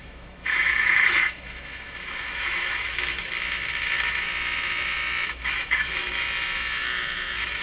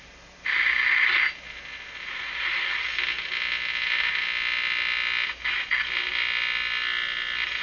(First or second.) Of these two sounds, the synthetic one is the first